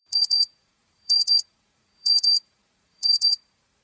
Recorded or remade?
remade